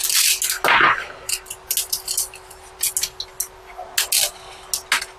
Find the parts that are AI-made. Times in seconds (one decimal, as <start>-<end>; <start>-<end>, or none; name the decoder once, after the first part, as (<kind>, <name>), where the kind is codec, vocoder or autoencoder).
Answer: none